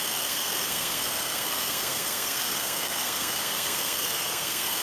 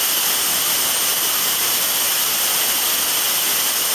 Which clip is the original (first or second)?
second